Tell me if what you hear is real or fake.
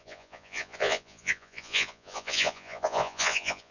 fake